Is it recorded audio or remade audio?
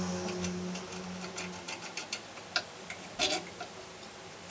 recorded